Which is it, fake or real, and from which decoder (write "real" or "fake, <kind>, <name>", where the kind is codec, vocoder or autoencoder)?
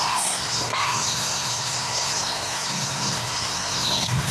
fake, codec, SNAC